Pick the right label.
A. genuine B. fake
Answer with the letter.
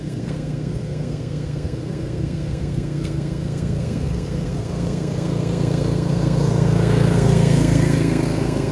B